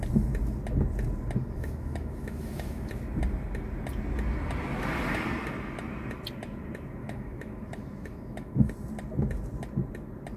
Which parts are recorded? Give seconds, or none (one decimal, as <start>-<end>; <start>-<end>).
0.0-1.4; 2.9-7.0; 8.7-10.4